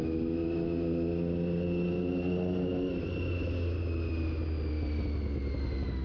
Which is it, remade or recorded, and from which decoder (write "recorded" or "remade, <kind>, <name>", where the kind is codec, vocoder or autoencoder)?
recorded